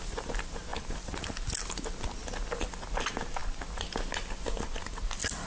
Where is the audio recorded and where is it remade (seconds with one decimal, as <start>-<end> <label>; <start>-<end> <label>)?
0.0-5.5 recorded